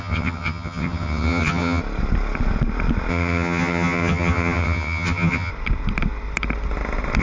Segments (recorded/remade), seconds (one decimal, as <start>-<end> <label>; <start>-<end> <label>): 0.0-1.8 remade; 1.8-3.1 recorded; 3.1-5.5 remade; 5.5-7.2 recorded